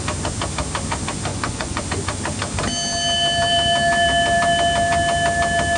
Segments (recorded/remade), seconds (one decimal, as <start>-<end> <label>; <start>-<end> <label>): 0.0-1.3 recorded; 1.3-1.8 remade; 1.8-5.8 recorded